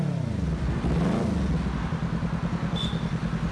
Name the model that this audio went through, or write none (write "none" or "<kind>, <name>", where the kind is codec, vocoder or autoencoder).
none